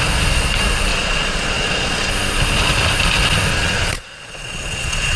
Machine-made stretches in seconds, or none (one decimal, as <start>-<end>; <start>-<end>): 0.9-2.1; 3.5-5.2